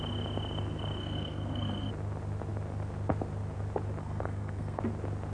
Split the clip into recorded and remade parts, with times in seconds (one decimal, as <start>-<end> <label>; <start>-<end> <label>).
0.0-1.0 recorded; 1.0-1.9 remade; 1.9-4.0 recorded; 4.0-4.8 remade; 4.8-5.3 recorded